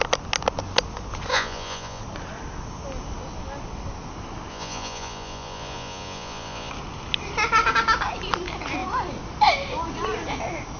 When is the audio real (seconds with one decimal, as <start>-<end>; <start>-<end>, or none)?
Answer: 0.0-1.3; 2.0-4.5; 6.7-10.8